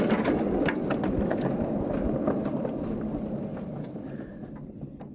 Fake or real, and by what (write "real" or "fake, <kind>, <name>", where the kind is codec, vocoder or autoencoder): real